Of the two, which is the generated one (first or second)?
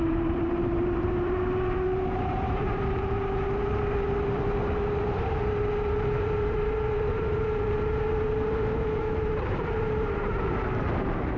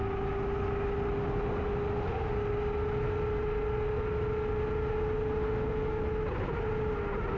first